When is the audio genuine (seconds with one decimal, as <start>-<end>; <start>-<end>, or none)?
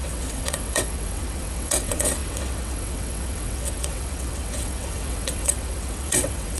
none